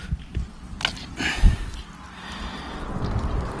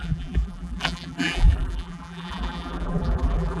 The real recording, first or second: first